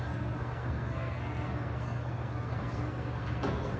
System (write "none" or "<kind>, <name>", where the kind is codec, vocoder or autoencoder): codec, SNAC